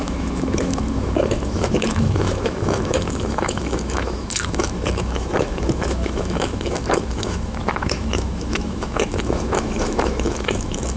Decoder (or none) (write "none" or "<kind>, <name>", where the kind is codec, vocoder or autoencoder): autoencoder, DAC-VAE